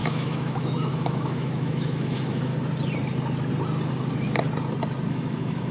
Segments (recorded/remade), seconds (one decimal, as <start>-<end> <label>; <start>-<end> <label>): 0.0-2.5 remade; 2.5-5.1 recorded; 5.1-5.7 remade